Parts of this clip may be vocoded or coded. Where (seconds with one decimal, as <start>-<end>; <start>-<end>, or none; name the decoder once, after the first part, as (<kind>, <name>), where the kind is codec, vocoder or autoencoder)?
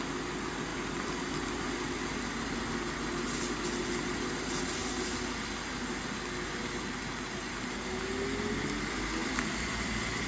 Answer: 0.7-1.2 (vocoder, BigVGAN v2); 9.2-10.3